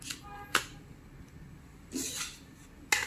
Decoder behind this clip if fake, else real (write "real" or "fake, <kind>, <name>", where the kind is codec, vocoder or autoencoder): real